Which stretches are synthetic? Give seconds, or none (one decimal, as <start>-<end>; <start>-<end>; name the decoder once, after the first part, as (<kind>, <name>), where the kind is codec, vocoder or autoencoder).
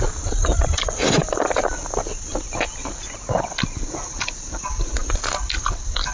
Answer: none